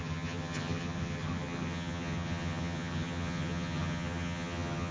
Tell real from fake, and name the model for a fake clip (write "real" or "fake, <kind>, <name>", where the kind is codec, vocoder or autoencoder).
fake, vocoder, HiFi-GAN